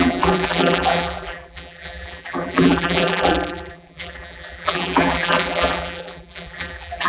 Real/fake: fake